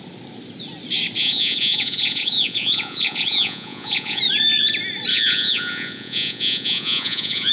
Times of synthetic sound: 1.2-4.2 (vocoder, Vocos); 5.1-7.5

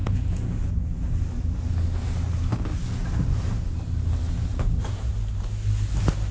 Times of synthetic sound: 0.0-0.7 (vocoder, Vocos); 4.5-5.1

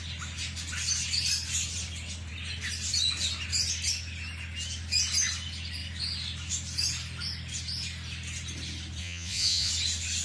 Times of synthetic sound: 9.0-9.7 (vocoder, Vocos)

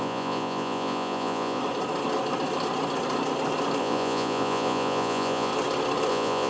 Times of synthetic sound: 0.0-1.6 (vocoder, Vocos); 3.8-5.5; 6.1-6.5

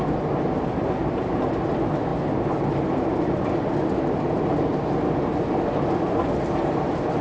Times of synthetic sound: none